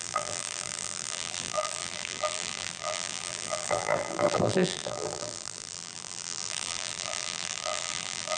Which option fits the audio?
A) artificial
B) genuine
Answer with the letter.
A